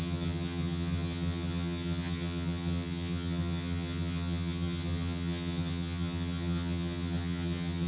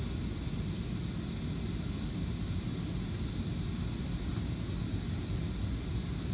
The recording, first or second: second